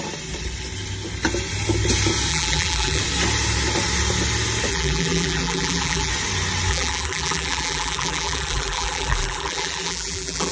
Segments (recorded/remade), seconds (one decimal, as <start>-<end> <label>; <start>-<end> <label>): 0.0-2.3 recorded; 2.3-3.0 remade; 3.0-4.7 recorded; 4.7-6.1 remade; 6.1-6.7 recorded; 6.7-10.5 remade